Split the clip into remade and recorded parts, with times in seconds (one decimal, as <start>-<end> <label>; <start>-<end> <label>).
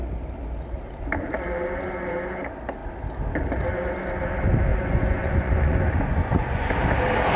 0.0-4.7 recorded; 4.7-6.7 remade; 6.7-7.4 recorded